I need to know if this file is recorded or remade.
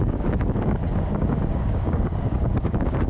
remade